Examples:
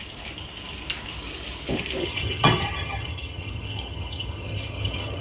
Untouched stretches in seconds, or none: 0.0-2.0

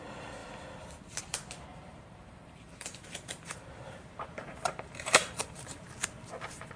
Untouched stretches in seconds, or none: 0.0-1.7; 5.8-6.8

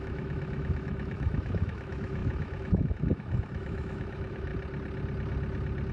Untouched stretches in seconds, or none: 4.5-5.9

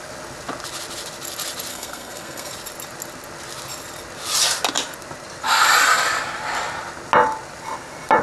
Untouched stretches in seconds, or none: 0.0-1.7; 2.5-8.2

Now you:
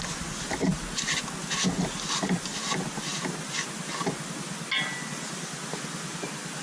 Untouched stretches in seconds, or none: 0.0-6.6